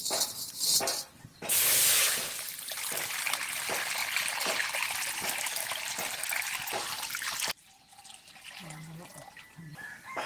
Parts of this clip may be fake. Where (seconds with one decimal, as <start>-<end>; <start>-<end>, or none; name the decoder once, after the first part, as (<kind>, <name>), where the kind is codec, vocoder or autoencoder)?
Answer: none